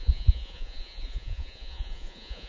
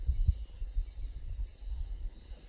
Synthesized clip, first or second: first